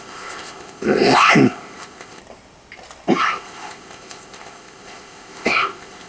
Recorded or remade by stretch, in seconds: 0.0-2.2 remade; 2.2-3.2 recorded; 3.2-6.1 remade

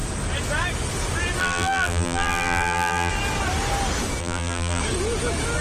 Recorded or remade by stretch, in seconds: 0.0-1.4 recorded; 1.4-3.1 remade; 3.1-4.2 recorded; 4.2-4.8 remade; 4.8-5.6 recorded

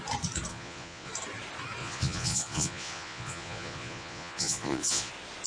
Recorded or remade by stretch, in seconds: 0.0-0.5 recorded; 0.5-1.1 remade; 1.1-1.8 recorded; 1.8-5.1 remade; 5.1-5.5 recorded

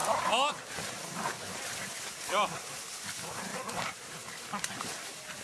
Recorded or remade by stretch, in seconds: 0.0-1.8 recorded; 1.8-2.7 remade; 2.7-3.5 recorded; 3.5-4.9 remade; 4.9-5.4 recorded

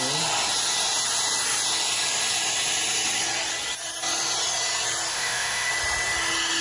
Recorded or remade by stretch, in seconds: 0.0-5.1 recorded; 5.1-5.7 remade; 5.7-6.6 recorded

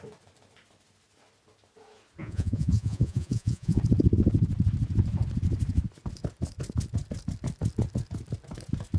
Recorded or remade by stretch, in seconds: 0.0-2.2 recorded; 2.2-3.8 remade; 3.8-9.0 recorded

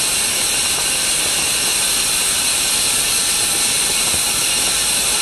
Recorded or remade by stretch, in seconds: 0.0-5.2 recorded

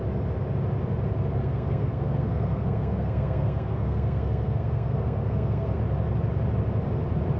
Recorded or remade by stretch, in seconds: 0.0-1.4 recorded; 1.4-5.8 remade; 5.8-7.4 recorded